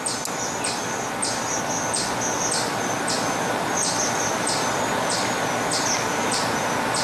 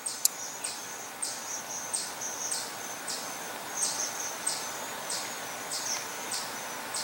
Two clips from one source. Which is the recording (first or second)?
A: first